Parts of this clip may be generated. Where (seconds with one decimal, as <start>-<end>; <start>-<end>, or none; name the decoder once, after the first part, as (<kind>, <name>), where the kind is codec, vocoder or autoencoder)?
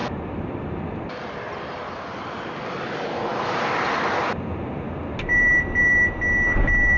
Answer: 0.0-0.8 (vocoder, BigVGAN v2)